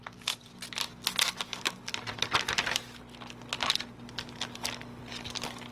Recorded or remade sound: recorded